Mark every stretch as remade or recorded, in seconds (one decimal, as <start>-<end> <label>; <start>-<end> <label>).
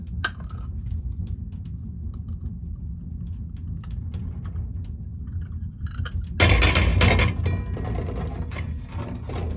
0.0-9.6 recorded